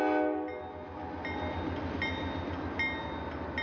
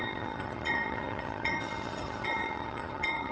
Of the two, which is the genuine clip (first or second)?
first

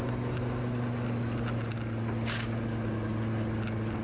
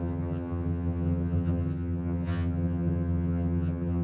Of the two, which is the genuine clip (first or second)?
first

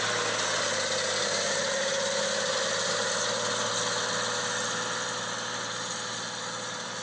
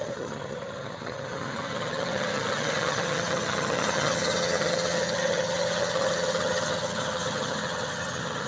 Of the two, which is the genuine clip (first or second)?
first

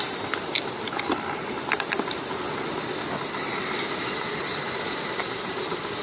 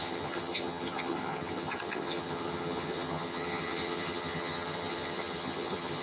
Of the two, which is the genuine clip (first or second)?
first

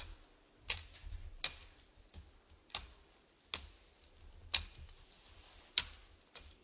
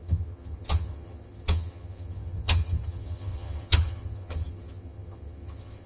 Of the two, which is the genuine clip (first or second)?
first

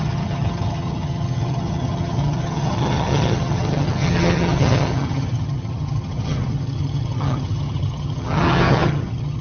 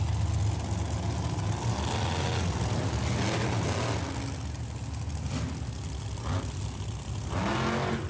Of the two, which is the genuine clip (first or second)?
second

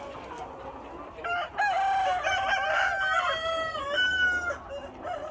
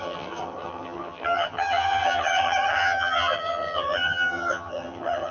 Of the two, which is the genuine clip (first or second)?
first